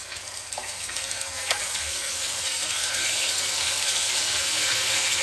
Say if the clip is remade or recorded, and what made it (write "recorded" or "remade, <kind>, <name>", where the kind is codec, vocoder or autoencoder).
remade, codec, SNAC